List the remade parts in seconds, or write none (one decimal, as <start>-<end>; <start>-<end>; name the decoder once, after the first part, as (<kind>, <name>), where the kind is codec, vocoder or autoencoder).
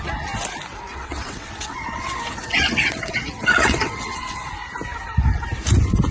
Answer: 0.9-4.5 (vocoder, WaveNeXt)